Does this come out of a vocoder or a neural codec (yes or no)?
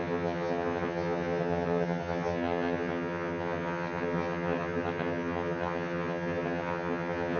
yes